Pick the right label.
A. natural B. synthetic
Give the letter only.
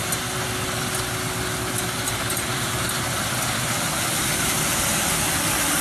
A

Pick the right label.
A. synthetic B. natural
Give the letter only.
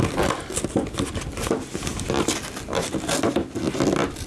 B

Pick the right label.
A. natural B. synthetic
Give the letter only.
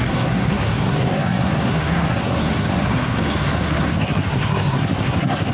B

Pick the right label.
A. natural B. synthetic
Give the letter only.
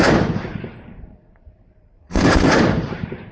B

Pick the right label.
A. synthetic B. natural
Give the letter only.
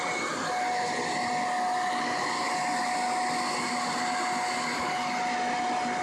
B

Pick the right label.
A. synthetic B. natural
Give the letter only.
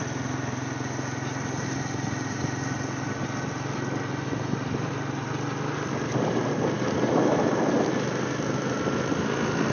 B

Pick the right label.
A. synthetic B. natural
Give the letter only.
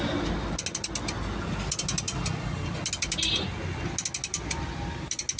B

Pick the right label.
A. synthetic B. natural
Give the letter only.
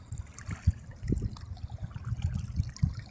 B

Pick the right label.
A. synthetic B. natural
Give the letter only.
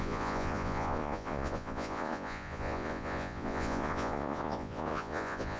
A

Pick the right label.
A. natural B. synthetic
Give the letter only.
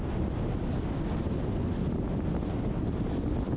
A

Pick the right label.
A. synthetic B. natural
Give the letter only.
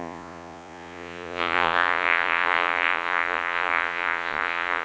A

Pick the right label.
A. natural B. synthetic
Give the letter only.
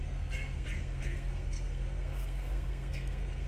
B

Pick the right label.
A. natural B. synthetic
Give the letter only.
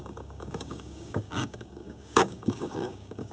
B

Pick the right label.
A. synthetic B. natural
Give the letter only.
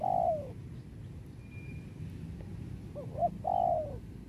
B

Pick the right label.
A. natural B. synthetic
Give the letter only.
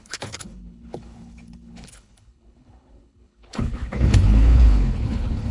B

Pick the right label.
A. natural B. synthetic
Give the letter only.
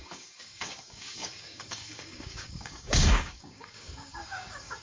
B